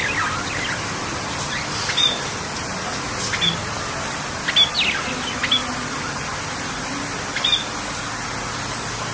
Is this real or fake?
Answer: real